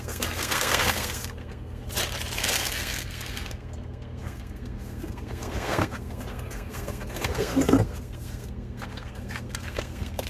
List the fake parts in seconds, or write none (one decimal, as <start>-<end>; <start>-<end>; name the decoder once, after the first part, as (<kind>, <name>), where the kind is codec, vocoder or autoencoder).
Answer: 0.0-1.8 (codec, SNAC); 2.4-10.3